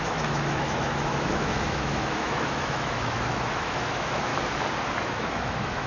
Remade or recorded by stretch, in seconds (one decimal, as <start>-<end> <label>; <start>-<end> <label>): 0.0-4.3 remade; 4.3-4.9 recorded; 4.9-5.9 remade

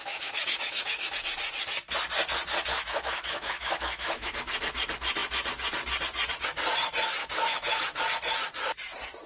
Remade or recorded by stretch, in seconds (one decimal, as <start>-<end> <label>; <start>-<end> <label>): 0.0-1.2 remade; 1.2-2.7 recorded; 2.7-4.3 remade; 4.3-7.2 recorded; 7.2-8.0 remade; 8.0-9.3 recorded

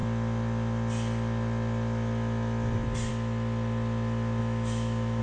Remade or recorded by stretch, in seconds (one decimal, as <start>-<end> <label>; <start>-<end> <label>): 0.0-4.4 recorded; 4.4-5.2 remade

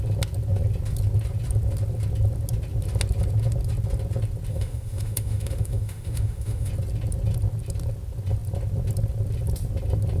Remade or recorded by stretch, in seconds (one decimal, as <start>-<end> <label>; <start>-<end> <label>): 0.0-4.5 recorded; 4.5-6.7 remade; 6.7-10.2 recorded

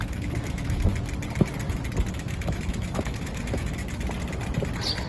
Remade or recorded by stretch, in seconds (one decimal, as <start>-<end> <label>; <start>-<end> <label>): 0.0-0.9 remade; 0.9-2.1 recorded; 2.1-3.8 remade; 3.8-5.1 recorded

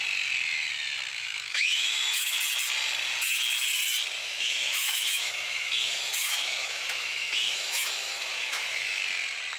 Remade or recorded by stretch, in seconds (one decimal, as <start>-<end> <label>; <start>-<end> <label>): 0.0-1.1 recorded; 1.1-2.4 remade; 2.4-4.2 recorded; 4.2-9.0 remade; 9.0-9.6 recorded